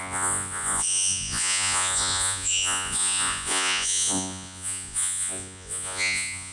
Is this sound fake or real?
fake